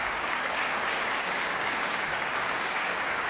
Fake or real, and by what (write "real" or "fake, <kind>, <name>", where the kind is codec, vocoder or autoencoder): fake, codec, DAC